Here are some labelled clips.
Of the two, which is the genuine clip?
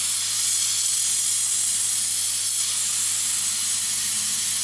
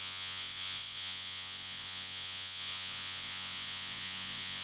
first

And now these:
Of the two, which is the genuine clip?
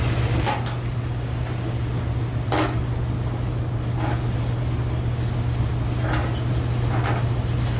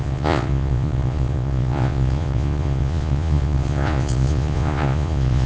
first